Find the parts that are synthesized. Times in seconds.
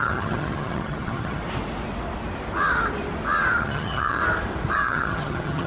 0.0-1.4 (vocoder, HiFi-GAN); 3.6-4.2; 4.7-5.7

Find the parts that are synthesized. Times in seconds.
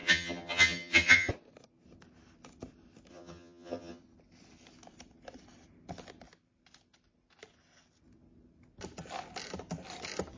0.0-1.3 (vocoder, HiFi-GAN); 3.1-4.0